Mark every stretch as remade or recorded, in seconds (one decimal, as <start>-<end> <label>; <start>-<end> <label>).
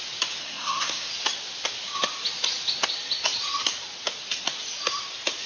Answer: 0.0-0.4 recorded; 0.4-1.1 remade; 1.1-5.5 recorded